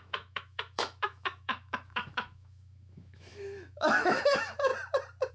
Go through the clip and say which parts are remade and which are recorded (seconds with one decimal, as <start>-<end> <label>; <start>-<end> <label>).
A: 0.0-4.7 remade; 4.7-5.3 recorded